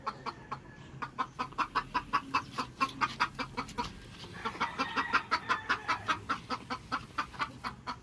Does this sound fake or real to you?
real